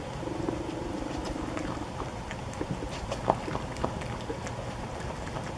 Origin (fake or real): real